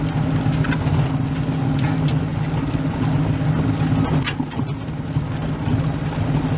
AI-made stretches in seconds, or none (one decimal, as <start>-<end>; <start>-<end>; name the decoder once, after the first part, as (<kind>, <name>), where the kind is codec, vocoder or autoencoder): none